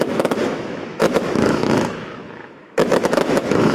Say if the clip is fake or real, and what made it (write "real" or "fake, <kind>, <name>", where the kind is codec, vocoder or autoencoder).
fake, autoencoder, DAC-VAE